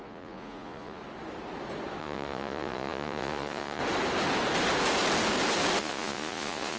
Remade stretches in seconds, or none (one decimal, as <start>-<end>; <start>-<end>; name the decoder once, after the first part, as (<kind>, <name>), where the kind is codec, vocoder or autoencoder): 0.0-1.0 (vocoder, Vocos); 2.0-3.8; 5.8-6.8